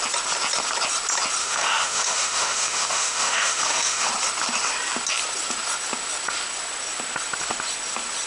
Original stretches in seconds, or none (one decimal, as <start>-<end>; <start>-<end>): 0.0-1.4; 4.1-8.3